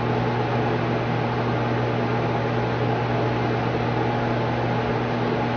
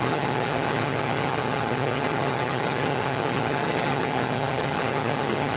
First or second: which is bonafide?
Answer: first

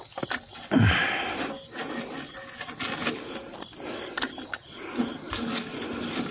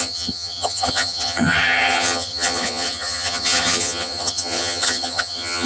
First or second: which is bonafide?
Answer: first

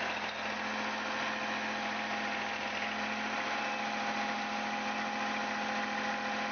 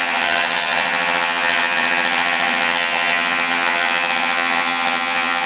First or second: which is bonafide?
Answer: first